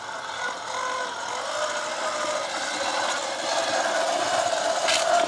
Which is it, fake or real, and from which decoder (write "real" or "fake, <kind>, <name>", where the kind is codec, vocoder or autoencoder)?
real